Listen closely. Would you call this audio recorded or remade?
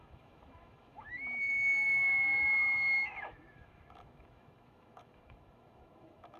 remade